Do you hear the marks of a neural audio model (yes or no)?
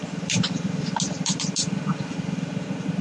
no